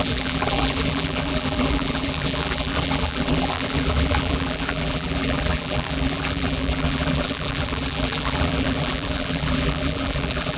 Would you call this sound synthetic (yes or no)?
yes